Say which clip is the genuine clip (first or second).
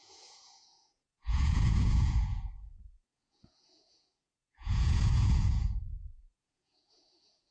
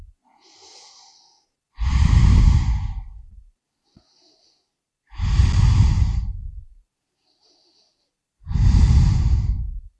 second